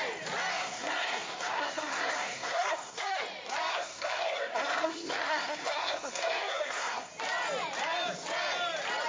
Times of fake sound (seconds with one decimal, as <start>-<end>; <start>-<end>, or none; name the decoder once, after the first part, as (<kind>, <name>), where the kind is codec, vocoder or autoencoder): 0.5-3.2 (codec, SNAC); 3.7-7.1